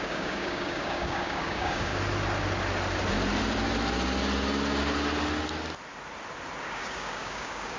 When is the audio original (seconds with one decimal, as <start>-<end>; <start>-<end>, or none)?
1.9-6.6